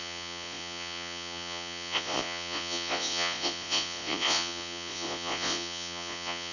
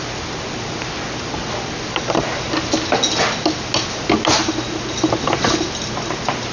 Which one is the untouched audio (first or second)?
second